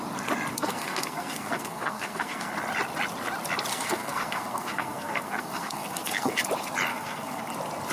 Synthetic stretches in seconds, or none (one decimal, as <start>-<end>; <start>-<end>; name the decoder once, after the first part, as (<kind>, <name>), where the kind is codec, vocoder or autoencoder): 0.5-2.5 (codec, SNAC); 3.7-6.4; 6.9-7.4